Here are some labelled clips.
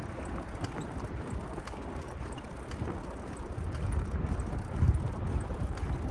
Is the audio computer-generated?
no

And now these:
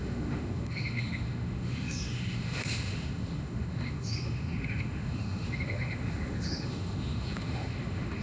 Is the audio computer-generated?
yes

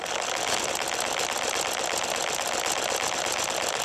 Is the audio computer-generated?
no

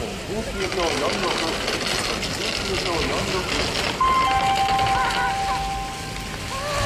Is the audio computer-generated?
no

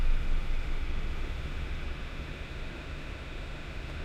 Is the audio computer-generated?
yes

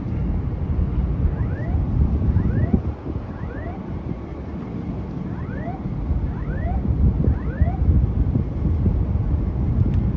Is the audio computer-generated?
no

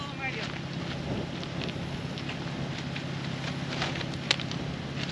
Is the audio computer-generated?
no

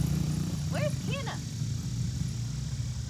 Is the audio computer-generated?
no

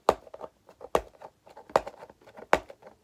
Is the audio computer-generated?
no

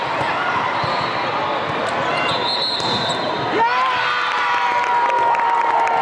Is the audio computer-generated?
no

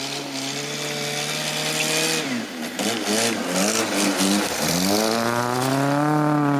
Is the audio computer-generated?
no